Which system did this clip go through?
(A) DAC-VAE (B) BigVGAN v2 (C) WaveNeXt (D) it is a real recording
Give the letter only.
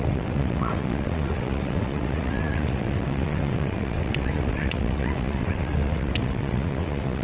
C